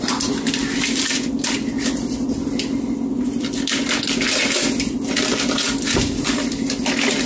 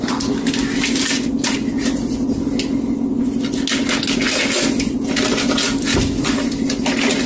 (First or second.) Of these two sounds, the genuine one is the second